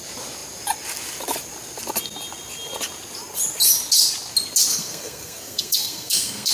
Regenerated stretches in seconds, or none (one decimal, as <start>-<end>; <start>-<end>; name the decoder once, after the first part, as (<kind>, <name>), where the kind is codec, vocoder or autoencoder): 4.7-6.5 (codec, SNAC)